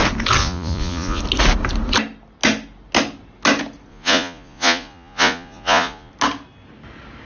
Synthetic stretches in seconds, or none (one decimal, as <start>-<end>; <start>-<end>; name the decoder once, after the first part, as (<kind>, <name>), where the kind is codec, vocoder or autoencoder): 0.4-1.2 (vocoder, Vocos); 3.9-6.1